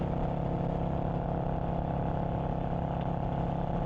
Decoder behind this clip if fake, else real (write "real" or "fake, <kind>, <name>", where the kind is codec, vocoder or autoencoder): real